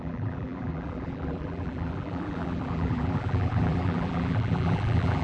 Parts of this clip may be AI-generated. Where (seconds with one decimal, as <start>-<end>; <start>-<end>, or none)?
0.0-5.2